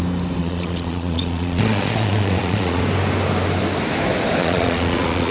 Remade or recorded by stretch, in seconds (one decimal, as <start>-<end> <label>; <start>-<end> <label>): 0.0-0.4 recorded; 0.4-2.8 remade; 2.8-4.4 recorded; 4.4-5.3 remade